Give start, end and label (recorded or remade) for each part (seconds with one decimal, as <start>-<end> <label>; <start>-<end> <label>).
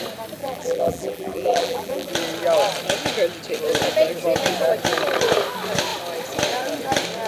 0.0-0.4 recorded; 0.4-2.1 remade; 2.1-7.3 recorded